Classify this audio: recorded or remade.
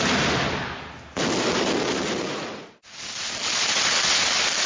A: recorded